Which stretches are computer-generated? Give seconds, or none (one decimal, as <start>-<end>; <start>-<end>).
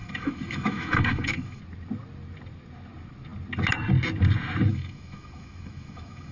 0.0-1.6; 4.7-6.3